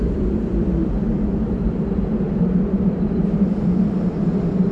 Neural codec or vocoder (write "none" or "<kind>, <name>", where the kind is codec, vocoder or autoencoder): vocoder, BigVGAN v2